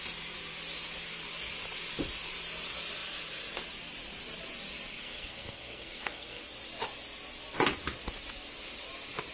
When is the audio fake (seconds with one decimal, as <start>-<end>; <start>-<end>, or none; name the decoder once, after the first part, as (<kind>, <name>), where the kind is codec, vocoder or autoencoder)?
4.9-6.4 (codec, SNAC)